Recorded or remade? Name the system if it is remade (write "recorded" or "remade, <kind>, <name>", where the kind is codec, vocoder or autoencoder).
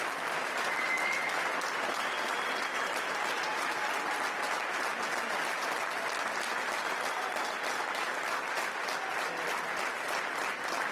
recorded